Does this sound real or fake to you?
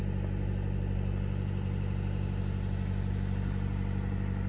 real